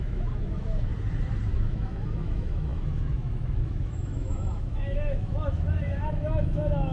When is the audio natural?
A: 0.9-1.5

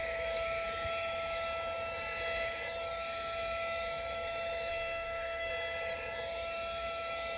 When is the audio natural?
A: 0.0-4.7; 5.5-7.4

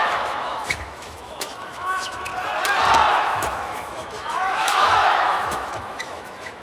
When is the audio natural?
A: 2.3-3.1

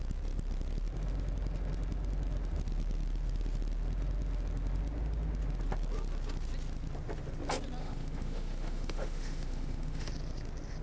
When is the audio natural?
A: 0.0-7.8; 10.1-10.8

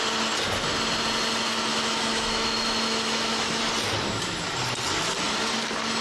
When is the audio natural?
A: 0.0-1.7; 3.6-6.0